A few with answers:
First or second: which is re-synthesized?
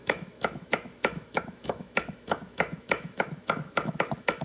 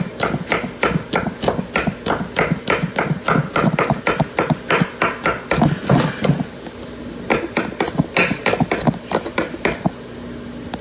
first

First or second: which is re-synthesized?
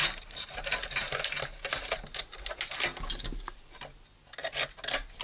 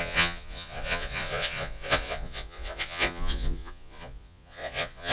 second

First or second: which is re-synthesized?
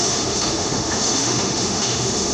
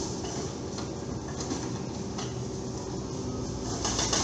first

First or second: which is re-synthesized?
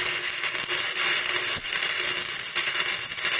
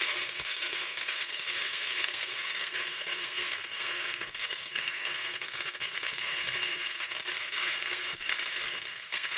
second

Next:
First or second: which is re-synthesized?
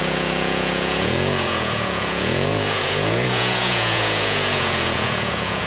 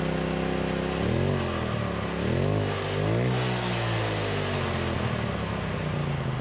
first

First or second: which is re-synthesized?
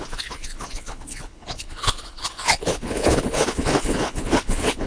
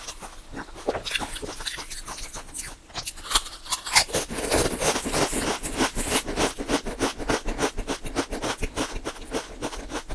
first